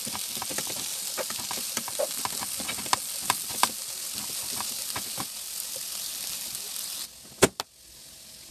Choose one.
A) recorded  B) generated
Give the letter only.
A